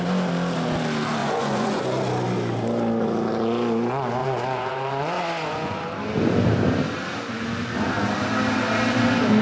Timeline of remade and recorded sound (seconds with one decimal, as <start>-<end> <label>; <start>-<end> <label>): 0.0-1.2 recorded; 1.2-1.8 remade; 1.8-4.2 recorded; 4.2-5.9 remade; 5.9-9.4 recorded

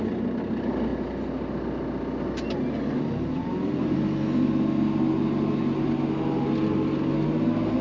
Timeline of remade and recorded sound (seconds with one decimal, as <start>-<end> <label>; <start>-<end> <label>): 0.0-7.8 recorded

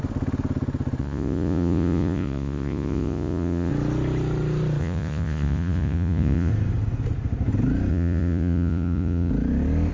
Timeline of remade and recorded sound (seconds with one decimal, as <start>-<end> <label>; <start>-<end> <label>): 0.0-1.0 recorded; 1.0-3.7 remade; 3.7-4.8 recorded; 4.8-6.5 remade; 6.5-7.9 recorded; 7.9-9.3 remade; 9.3-9.9 recorded

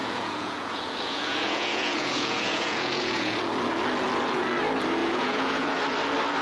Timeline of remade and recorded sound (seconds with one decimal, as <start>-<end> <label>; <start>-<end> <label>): 0.0-3.4 remade; 3.4-5.0 recorded; 5.0-5.8 remade; 5.8-6.4 recorded

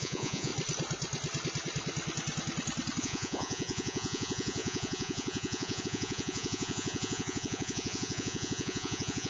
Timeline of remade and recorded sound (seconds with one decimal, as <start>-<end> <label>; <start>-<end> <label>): 0.0-0.5 remade; 0.5-3.0 recorded; 3.0-9.3 remade